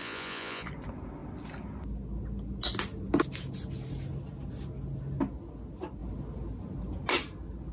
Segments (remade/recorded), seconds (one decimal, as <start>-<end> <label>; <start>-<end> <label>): 0.0-0.7 remade; 0.7-7.7 recorded